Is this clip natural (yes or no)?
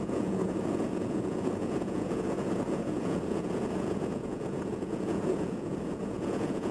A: no